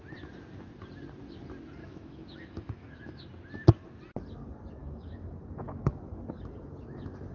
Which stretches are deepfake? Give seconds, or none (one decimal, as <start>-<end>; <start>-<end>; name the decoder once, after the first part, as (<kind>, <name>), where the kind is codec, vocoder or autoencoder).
1.8-3.3 (autoencoder, DAC-VAE); 4.8-6.1